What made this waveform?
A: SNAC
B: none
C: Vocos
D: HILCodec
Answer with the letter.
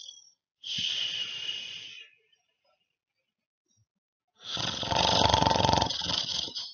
B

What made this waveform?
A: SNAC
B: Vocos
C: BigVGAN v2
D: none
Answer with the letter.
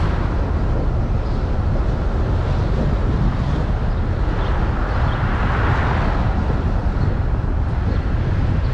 D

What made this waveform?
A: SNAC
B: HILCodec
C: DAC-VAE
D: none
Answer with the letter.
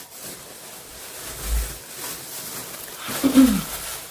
D